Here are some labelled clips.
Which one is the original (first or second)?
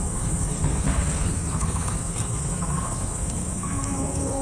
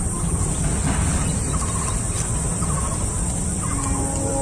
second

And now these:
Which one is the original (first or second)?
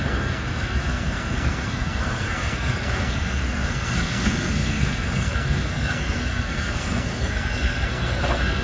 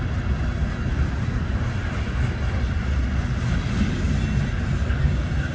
second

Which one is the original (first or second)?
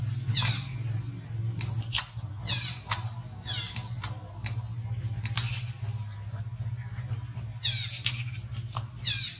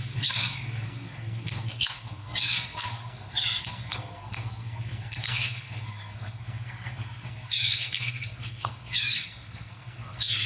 first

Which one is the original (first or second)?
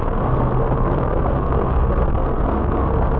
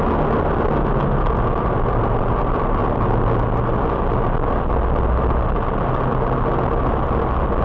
second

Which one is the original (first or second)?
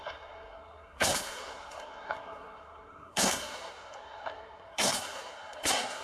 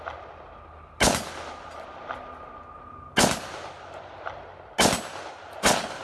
second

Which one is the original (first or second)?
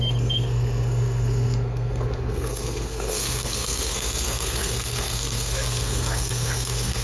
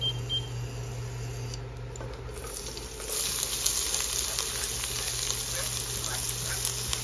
second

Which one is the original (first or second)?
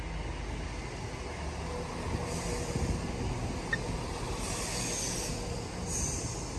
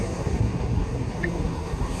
first